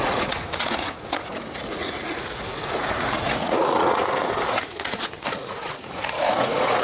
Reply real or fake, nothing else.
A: fake